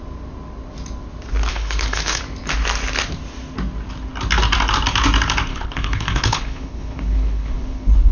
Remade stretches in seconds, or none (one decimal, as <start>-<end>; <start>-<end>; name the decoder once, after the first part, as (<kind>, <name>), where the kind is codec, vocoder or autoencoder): 1.5-2.2 (codec, HILCodec); 5.5-8.1